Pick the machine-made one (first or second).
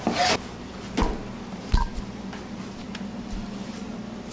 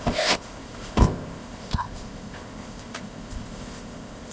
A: second